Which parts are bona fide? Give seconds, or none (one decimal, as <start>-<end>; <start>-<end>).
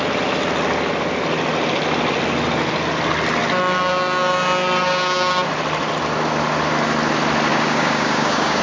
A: 0.0-7.5